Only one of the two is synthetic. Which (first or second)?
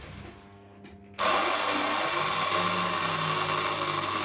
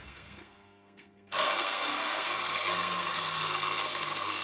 second